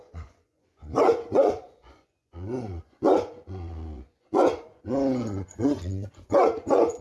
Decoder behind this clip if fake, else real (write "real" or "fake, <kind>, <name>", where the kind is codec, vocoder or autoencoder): fake, vocoder, Vocos